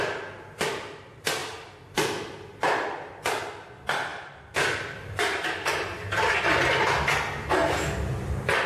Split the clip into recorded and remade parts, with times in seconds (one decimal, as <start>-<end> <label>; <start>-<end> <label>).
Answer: 0.0-1.4 recorded; 1.4-3.4 remade; 3.4-4.1 recorded; 4.1-6.4 remade; 6.4-8.7 recorded

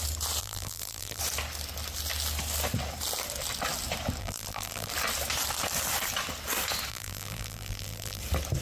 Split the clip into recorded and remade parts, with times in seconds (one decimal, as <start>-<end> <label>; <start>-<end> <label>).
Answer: 0.0-0.4 recorded; 0.4-1.2 remade; 1.2-4.2 recorded; 4.2-4.9 remade; 4.9-6.9 recorded; 6.9-8.2 remade; 8.2-8.6 recorded

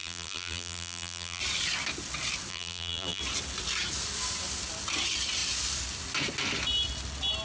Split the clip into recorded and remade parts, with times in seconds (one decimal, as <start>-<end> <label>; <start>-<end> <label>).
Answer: 0.0-1.4 remade; 1.4-2.5 recorded; 2.5-3.2 remade; 3.2-7.4 recorded

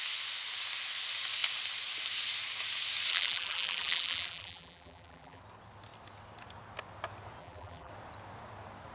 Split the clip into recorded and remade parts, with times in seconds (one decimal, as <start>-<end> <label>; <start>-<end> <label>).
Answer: 0.0-3.1 recorded; 3.1-5.4 remade; 5.4-7.4 recorded; 7.4-7.9 remade; 7.9-8.9 recorded

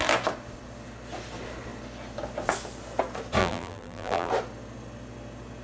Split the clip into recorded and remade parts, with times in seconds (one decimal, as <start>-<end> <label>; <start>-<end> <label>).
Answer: 0.0-3.4 recorded; 3.4-4.3 remade; 4.3-5.6 recorded

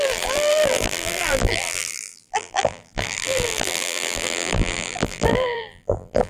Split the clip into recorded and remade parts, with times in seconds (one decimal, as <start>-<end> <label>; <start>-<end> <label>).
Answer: 0.0-6.3 remade